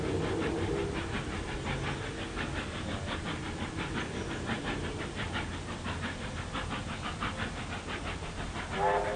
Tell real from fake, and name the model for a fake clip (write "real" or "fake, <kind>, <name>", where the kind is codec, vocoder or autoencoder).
real